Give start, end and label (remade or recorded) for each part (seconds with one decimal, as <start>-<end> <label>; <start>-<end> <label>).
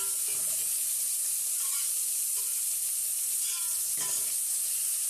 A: 0.0-5.1 recorded